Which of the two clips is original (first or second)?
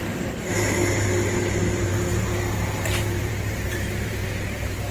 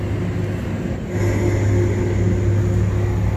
second